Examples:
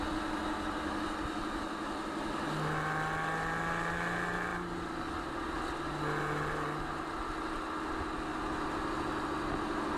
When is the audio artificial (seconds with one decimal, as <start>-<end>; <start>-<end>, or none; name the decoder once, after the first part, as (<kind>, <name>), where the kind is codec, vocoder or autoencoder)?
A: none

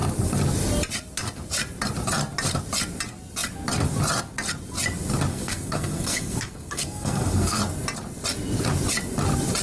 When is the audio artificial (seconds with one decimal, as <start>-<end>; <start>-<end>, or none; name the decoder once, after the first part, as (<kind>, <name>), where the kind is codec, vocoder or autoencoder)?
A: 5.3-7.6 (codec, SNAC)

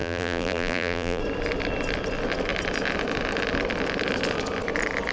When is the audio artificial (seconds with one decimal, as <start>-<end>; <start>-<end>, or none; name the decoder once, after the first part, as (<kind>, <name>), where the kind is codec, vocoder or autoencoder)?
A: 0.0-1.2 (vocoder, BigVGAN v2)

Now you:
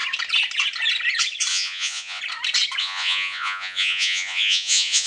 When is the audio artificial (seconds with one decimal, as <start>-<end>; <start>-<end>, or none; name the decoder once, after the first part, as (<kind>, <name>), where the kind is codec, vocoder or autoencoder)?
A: 1.5-2.2 (vocoder, Vocos); 2.8-5.1

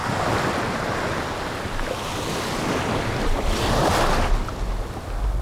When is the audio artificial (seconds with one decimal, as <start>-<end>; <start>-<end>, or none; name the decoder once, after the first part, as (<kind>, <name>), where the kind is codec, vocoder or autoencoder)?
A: none

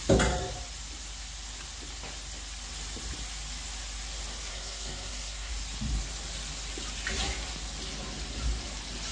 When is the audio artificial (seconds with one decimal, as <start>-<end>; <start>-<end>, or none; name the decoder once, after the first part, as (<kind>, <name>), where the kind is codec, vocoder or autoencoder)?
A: 4.5-5.5 (codec, SNAC)